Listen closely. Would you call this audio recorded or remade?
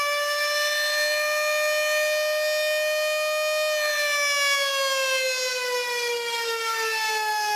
recorded